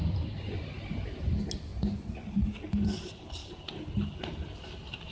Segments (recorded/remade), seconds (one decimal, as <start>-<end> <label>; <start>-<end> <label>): 0.0-5.1 recorded